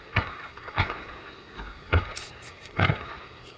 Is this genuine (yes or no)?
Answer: no